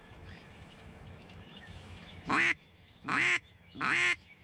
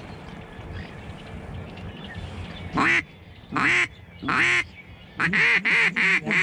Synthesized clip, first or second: first